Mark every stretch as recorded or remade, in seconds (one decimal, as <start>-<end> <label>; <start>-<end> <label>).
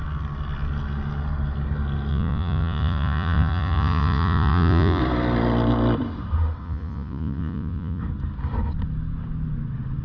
0.0-2.1 recorded; 2.1-5.0 remade; 5.0-6.6 recorded; 6.6-8.0 remade; 8.0-10.0 recorded